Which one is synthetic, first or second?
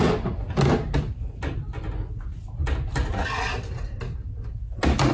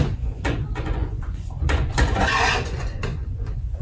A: second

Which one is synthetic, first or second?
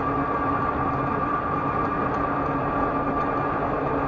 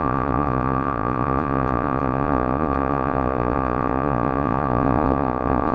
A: second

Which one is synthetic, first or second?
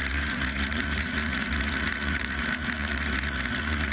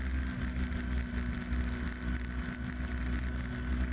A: first